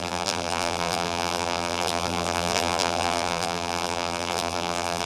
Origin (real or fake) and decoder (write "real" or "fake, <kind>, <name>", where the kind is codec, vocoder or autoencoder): fake, vocoder, BigVGAN v2